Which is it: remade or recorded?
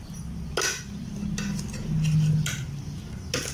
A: recorded